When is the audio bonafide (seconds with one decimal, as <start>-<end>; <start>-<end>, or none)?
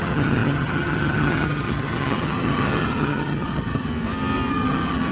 3.9-4.5